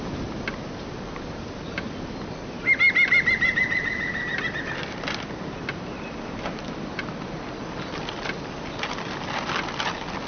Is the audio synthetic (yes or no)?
no